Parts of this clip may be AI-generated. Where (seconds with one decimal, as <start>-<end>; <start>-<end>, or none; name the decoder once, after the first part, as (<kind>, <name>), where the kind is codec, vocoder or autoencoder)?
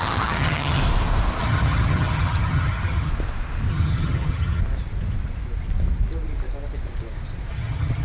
0.0-0.8 (vocoder, HiFi-GAN); 1.4-3.1; 3.7-4.6; 7.5-8.0